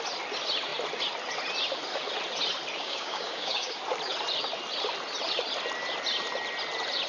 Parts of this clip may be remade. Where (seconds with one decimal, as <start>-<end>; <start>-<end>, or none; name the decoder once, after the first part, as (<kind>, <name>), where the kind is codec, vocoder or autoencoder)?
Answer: 2.8-3.8 (codec, DAC)